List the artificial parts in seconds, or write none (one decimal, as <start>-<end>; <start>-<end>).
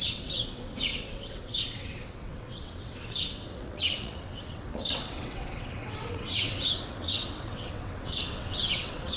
0.0-9.2